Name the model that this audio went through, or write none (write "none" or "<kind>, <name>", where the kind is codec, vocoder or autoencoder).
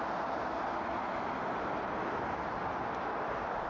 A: none